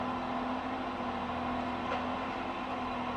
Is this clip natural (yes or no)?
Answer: yes